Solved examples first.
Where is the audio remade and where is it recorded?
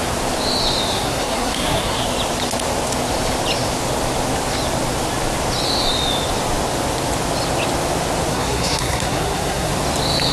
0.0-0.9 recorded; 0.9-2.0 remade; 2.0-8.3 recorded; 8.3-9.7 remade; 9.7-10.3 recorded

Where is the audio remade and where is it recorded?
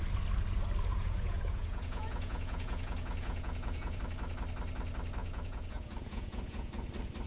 0.0-0.9 recorded; 0.9-4.0 remade; 4.0-5.2 recorded; 5.2-6.7 remade; 6.7-7.3 recorded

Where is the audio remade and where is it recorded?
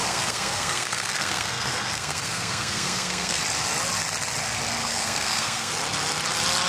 0.0-3.4 remade; 3.4-4.8 recorded; 4.8-5.7 remade; 5.7-6.7 recorded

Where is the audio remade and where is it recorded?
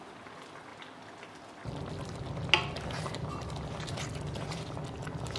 0.0-5.4 recorded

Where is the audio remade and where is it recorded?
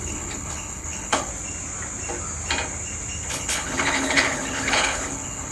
0.0-1.3 remade; 1.3-3.3 recorded; 3.3-5.5 remade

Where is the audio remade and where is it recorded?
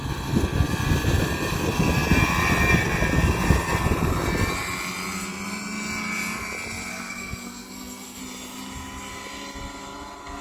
0.0-6.9 recorded; 6.9-8.2 remade; 8.2-10.4 recorded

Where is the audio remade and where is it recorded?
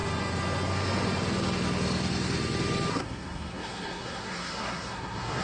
0.0-2.9 recorded; 2.9-5.4 remade